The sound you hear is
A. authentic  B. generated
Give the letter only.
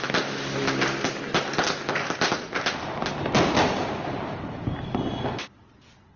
A